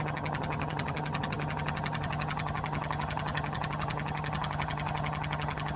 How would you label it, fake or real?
fake